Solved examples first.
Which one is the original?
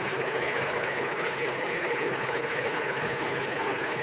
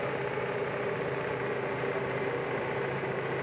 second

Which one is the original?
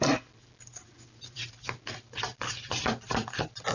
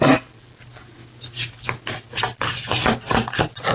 second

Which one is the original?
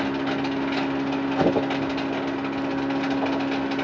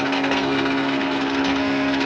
first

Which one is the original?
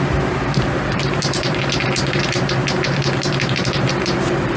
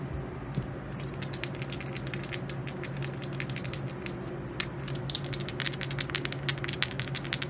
second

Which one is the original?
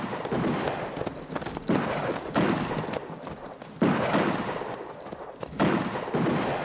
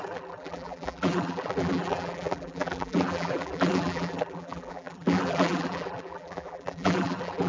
first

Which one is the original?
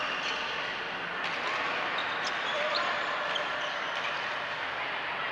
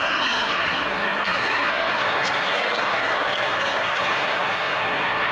first